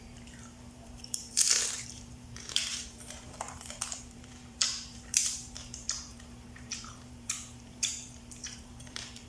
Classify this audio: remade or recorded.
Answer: remade